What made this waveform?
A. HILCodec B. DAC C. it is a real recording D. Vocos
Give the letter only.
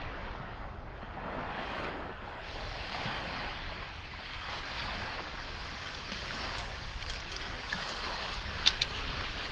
B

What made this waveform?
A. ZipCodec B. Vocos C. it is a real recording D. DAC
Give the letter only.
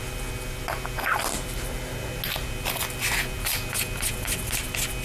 C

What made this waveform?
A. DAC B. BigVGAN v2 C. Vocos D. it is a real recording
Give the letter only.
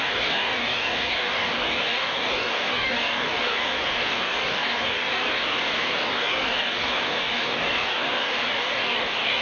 A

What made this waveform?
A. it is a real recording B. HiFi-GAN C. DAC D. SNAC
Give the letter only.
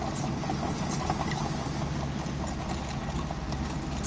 A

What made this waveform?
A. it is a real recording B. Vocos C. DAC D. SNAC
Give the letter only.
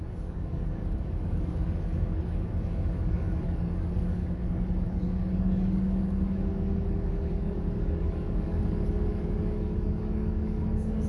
C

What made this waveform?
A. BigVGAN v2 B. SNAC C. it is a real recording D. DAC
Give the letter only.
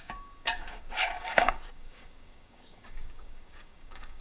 D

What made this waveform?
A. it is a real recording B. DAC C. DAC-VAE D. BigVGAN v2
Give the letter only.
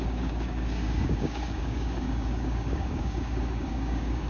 B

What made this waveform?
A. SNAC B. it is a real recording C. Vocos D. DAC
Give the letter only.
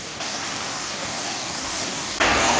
D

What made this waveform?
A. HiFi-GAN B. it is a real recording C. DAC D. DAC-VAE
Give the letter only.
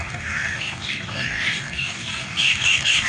C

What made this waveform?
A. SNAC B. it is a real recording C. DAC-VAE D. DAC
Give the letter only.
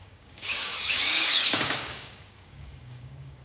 D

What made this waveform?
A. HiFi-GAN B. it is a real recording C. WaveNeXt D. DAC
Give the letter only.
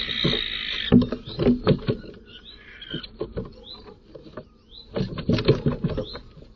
B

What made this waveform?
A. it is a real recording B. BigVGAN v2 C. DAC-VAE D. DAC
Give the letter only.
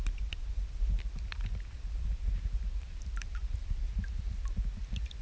A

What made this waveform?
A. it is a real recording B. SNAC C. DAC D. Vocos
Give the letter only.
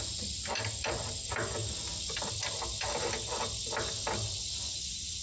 A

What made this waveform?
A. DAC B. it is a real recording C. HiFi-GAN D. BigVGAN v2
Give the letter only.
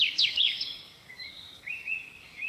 A